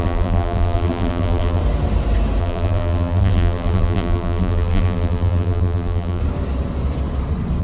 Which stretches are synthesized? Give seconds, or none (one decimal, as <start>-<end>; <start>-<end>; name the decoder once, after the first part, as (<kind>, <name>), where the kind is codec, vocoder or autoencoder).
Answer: 0.0-1.6 (vocoder, BigVGAN v2); 2.4-6.2